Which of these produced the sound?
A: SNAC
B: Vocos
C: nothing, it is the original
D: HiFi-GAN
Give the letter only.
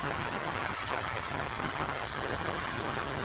D